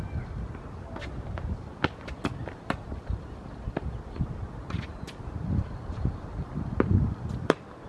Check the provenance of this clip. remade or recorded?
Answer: remade